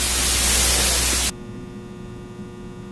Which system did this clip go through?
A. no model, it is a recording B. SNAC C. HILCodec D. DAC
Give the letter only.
A